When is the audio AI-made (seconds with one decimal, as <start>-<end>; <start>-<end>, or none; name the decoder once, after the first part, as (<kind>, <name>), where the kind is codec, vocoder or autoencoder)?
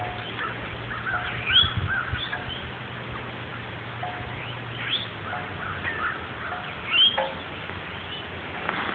none